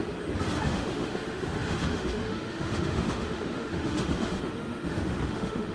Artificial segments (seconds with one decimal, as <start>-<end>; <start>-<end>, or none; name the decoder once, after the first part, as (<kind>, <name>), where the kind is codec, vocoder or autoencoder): 0.6-5.7 (autoencoder, DAC-VAE)